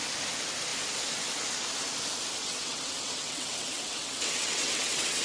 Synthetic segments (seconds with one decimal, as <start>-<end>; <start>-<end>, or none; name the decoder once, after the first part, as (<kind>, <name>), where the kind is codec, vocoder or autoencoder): 2.4-5.2 (vocoder, WaveNeXt)